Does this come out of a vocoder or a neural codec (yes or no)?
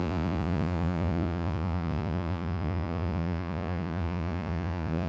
yes